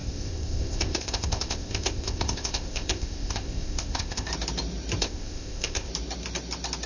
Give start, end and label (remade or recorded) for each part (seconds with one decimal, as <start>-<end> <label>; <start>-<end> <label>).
0.0-4.3 remade; 4.3-5.0 recorded; 5.0-5.9 remade; 5.9-6.9 recorded